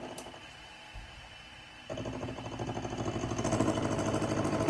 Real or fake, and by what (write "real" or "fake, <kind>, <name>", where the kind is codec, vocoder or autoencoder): real